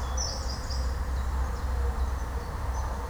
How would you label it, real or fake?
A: fake